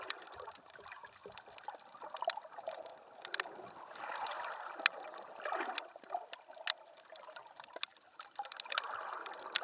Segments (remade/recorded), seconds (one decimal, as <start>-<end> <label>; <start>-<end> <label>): 0.0-9.6 recorded